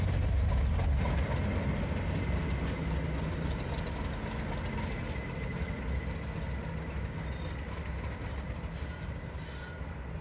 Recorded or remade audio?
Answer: recorded